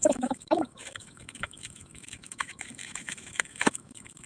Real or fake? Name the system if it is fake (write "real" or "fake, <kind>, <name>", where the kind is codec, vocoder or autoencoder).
fake, autoencoder, DAC-VAE